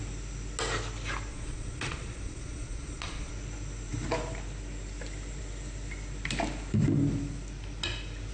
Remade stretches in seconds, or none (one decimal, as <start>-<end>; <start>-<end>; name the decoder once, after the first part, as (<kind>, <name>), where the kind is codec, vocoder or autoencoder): 1.3-3.3 (vocoder, Vocos)